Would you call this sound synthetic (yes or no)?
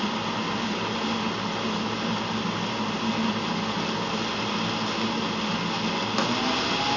no